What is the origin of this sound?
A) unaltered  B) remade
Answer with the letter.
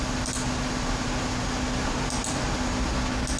A